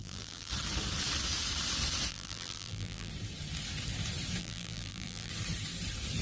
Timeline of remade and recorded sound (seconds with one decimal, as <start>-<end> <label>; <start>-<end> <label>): 0.0-0.5 remade; 0.5-2.1 recorded; 2.1-3.1 remade; 3.1-4.4 recorded; 4.4-5.3 remade; 5.3-6.2 recorded